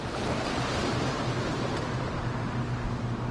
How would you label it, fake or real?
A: fake